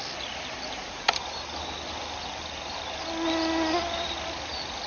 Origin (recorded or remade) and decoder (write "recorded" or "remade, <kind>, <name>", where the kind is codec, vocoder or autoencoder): recorded